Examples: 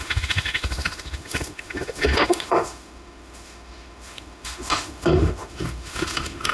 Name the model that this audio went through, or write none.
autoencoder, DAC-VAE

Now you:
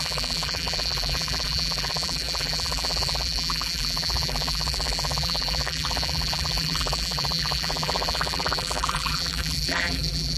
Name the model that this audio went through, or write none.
vocoder, BigVGAN v2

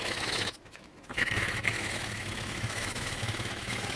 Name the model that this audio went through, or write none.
autoencoder, DAC-VAE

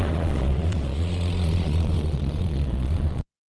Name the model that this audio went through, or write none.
vocoder, Vocos